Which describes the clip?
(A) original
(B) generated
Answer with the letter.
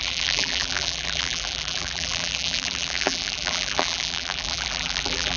B